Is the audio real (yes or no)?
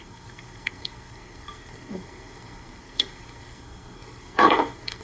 no